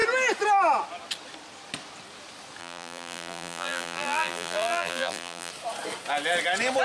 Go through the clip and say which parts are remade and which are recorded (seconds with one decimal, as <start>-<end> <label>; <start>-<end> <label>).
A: 0.0-2.6 recorded; 2.6-5.5 remade; 5.5-6.8 recorded